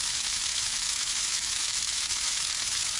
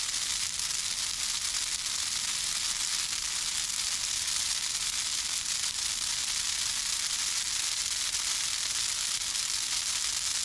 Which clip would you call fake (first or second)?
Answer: first